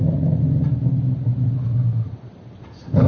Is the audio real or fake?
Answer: real